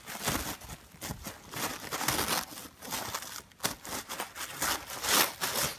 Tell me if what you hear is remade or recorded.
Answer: recorded